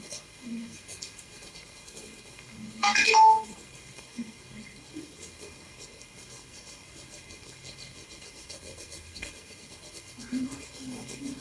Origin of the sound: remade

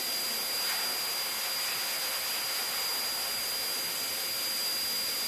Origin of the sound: recorded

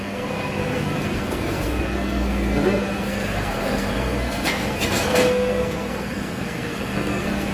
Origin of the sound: remade